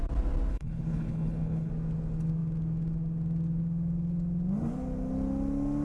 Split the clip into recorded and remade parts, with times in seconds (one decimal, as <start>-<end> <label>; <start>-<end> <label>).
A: 0.0-0.5 recorded; 0.5-1.7 remade; 1.7-5.8 recorded

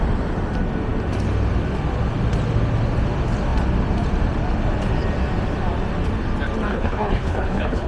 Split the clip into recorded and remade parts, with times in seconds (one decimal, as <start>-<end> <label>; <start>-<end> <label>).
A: 0.0-6.7 recorded; 6.7-7.9 remade

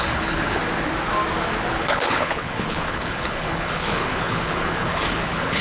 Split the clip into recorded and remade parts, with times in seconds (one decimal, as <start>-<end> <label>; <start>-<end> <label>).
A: 0.0-0.6 remade; 0.6-1.7 recorded; 1.7-5.6 remade

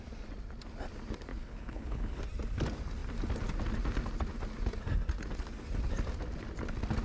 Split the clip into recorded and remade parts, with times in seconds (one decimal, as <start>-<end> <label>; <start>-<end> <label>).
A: 0.0-1.3 recorded; 1.3-2.2 remade; 2.2-7.0 recorded

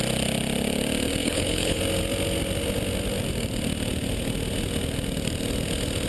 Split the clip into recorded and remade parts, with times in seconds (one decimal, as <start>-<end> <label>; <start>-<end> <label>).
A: 0.0-1.2 recorded; 1.2-1.8 remade; 1.8-6.1 recorded